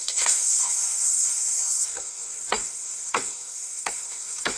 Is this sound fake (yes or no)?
yes